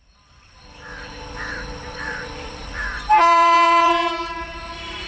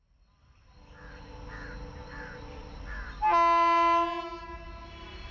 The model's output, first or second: first